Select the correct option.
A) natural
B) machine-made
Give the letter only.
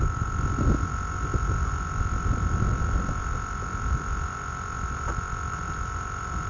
A